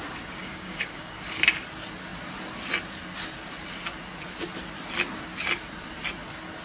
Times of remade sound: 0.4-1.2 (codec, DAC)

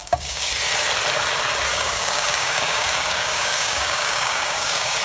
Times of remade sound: 0.0-0.5 (codec, DAC); 1.7-5.0

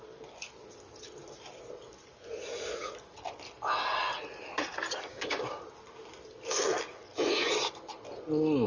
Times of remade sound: 5.1-5.6 (codec, DAC)

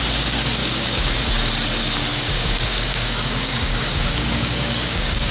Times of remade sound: 0.6-1.2 (codec, DAC); 2.1-5.3

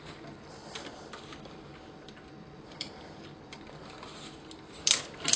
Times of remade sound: none

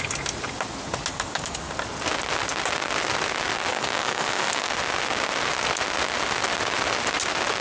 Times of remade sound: 1.1-1.7 (codec, DAC); 3.7-4.7

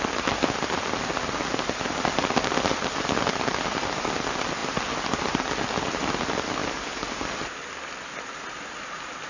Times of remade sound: none